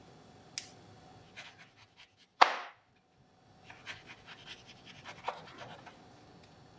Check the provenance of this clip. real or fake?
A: real